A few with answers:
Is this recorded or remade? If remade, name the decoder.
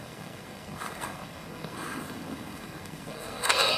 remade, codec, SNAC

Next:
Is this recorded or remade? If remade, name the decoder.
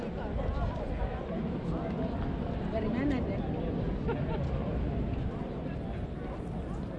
recorded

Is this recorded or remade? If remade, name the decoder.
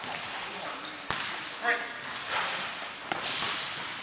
recorded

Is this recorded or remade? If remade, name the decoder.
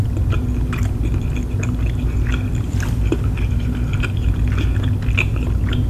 recorded